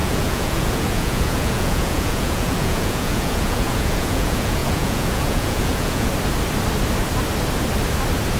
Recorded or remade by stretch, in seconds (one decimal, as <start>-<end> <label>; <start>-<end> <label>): 0.0-6.1 remade; 6.1-8.4 recorded